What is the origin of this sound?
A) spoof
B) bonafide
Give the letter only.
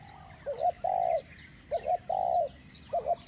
B